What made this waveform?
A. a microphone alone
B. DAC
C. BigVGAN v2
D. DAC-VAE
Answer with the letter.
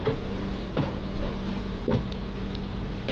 A